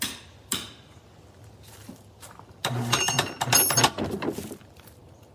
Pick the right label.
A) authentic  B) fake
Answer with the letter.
B